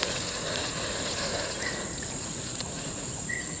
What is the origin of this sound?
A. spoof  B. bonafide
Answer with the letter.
A